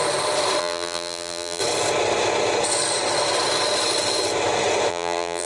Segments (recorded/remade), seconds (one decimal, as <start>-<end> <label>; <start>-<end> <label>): 0.0-0.6 recorded; 0.6-1.6 remade; 1.6-4.9 recorded; 4.9-5.5 remade